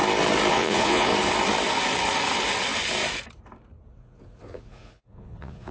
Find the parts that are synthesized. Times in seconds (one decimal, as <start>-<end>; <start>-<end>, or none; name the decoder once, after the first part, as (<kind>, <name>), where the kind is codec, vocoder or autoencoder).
0.5-1.1 (vocoder, Vocos); 4.0-5.7